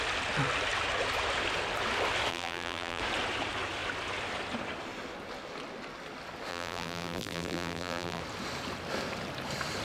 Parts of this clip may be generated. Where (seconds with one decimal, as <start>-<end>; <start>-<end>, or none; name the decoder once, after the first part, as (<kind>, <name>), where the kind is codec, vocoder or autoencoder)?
2.3-3.0 (vocoder, BigVGAN v2); 6.5-8.2